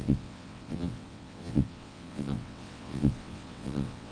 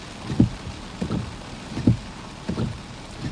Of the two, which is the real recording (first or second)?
second